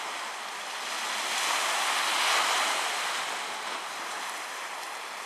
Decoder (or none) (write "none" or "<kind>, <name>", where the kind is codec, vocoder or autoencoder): none